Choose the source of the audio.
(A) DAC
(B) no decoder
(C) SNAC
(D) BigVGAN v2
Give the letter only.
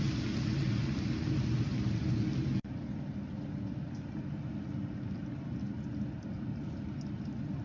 B